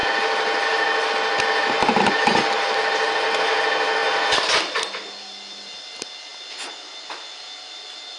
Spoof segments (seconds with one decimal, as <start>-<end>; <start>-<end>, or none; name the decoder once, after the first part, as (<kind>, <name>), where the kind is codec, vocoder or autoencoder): none